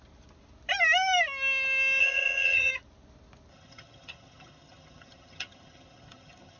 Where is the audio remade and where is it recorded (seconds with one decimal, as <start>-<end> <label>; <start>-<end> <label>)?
0.0-2.0 recorded; 2.0-2.7 remade; 2.7-3.5 recorded; 3.5-6.6 remade